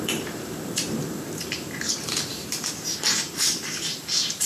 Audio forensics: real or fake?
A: fake